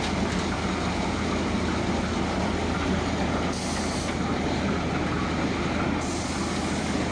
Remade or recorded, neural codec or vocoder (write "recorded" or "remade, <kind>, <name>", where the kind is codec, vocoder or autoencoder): recorded